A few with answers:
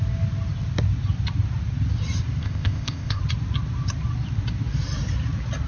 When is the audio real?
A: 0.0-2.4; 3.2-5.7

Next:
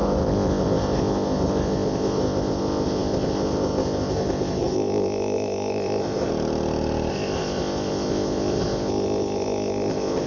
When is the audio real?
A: 6.3-7.1

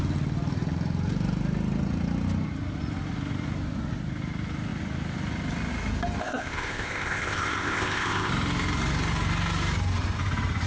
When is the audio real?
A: 0.0-6.2; 8.3-10.7